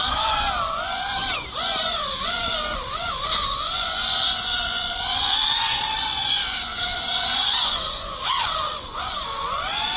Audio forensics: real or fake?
fake